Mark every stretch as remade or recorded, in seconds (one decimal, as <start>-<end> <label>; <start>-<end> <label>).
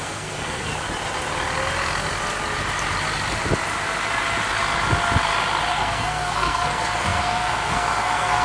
0.0-0.7 remade; 0.7-5.7 recorded; 5.7-8.4 remade